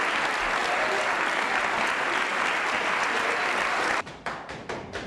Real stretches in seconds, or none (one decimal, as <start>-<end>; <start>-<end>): 0.0-5.1

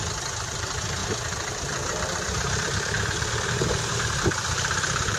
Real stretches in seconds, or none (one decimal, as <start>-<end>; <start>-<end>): none

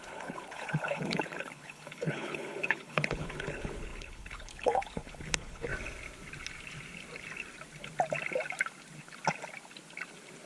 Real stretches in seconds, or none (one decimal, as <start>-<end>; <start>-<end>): 5.7-10.5